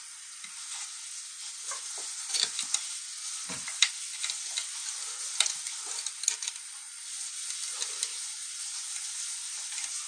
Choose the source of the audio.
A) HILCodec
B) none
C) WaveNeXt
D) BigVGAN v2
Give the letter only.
B